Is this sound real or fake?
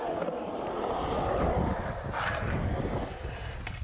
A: real